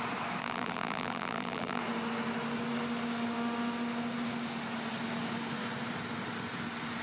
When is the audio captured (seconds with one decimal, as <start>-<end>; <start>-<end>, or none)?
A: 0.0-0.4; 1.8-7.0